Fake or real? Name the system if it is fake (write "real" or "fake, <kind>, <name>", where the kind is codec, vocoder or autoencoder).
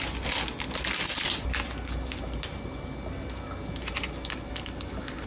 real